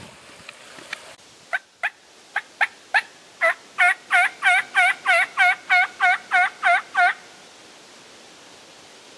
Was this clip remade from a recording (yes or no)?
no